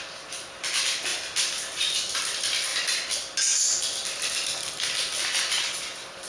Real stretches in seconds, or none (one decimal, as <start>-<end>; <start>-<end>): 0.0-1.1; 2.1-6.3